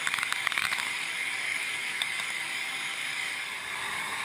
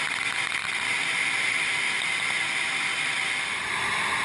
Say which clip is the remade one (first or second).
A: first